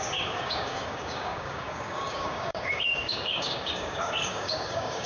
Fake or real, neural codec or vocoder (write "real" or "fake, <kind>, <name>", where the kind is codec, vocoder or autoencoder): fake, codec, DAC